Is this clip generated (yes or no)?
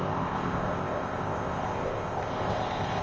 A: yes